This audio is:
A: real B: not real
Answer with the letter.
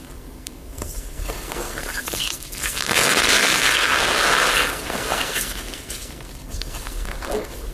B